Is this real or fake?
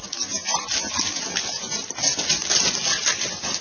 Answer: real